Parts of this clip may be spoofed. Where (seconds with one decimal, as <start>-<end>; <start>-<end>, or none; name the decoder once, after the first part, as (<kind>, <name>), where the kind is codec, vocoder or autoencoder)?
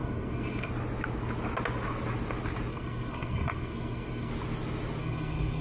0.0-0.7 (codec, SNAC); 2.7-4.3; 5.0-5.6